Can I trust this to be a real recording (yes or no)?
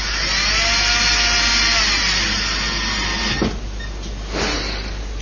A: yes